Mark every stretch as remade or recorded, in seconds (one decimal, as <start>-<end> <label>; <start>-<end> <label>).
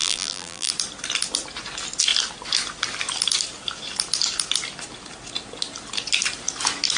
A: 0.0-0.7 remade; 0.7-7.0 recorded